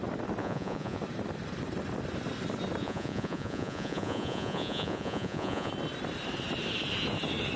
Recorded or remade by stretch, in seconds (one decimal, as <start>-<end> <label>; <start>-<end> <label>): 0.0-0.4 recorded; 0.4-1.0 remade; 1.0-2.8 recorded; 2.8-5.7 remade; 5.7-7.6 recorded